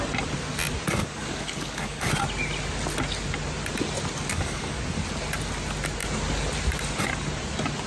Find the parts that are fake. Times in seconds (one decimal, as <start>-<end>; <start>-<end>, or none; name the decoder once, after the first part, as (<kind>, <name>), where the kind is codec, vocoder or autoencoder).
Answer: 1.0-2.1 (codec, DAC); 4.3-4.8